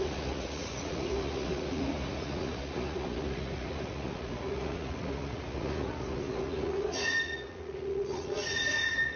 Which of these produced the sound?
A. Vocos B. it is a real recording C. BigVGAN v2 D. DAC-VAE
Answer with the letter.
A